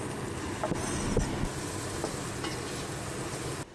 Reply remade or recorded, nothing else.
recorded